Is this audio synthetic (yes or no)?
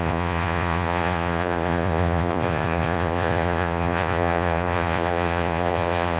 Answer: yes